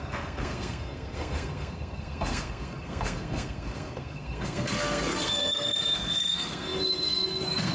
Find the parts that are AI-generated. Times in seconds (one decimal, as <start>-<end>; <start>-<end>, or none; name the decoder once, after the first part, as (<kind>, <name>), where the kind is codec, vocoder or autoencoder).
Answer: 0.0-7.7 (codec, SNAC)